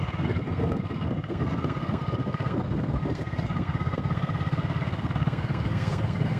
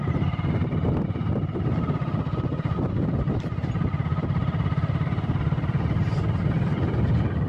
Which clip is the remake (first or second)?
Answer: first